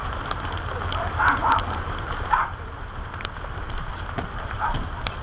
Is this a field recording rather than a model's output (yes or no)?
no